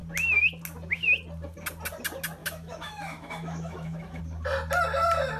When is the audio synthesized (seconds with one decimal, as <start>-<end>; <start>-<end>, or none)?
2.4-4.2